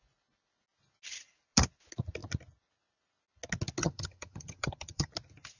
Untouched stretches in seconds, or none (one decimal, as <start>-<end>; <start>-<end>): 0.0-3.8; 5.1-5.6